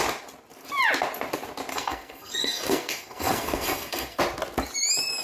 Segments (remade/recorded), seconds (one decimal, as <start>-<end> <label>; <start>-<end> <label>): 0.0-1.7 recorded; 1.7-4.2 remade; 4.2-5.2 recorded